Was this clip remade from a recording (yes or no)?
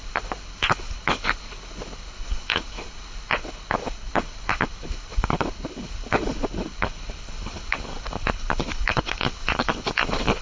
yes